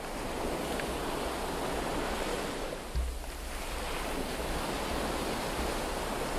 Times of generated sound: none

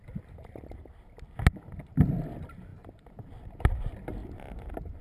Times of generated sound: none

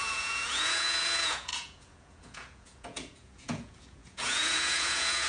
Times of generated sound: 0.0-5.3 (vocoder, Vocos)

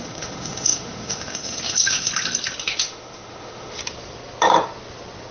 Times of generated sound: 0.0-2.1 (autoencoder, DAC-VAE); 2.6-3.8

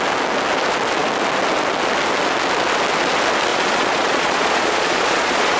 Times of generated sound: 3.5-5.6 (vocoder, Vocos)

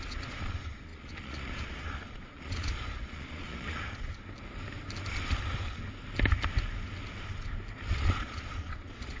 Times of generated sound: 0.0-4.1 (vocoder, Vocos); 7.9-9.2